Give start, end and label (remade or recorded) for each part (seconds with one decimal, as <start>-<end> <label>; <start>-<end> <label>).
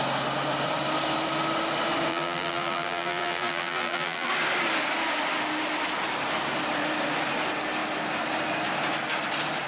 0.0-2.1 recorded; 2.1-4.3 remade; 4.3-9.7 recorded